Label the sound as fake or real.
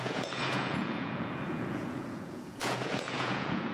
fake